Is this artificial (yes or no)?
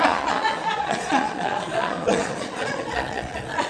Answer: yes